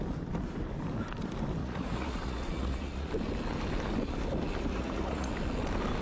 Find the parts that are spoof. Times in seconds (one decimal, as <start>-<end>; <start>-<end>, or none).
1.6-3.1; 4.7-5.3